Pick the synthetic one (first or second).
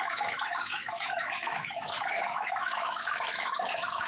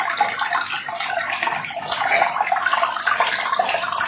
first